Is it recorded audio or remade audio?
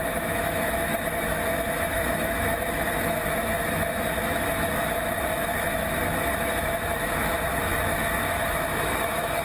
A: remade